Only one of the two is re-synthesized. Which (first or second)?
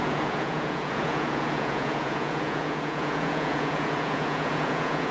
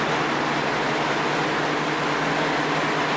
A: first